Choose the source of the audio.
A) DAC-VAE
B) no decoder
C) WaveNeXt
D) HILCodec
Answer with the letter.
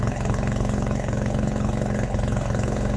D